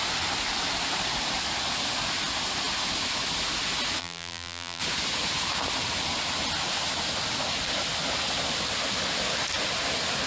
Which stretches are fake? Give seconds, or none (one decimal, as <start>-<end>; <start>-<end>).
4.0-4.8